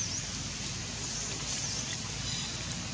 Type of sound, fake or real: real